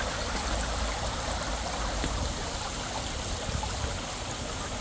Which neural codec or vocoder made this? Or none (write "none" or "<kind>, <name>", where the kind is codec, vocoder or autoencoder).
none